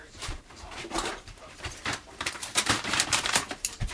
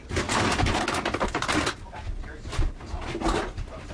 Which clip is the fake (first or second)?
first